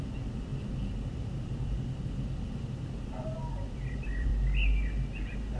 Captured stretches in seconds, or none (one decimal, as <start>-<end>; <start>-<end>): 4.3-5.6